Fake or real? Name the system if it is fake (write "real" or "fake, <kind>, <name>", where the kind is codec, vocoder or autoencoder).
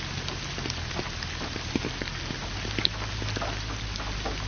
real